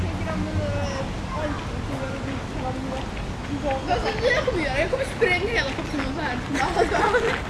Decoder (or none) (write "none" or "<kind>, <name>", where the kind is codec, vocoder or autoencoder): none